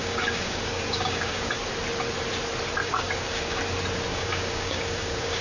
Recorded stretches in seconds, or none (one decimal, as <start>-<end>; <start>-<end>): 1.5-2.8; 3.6-4.1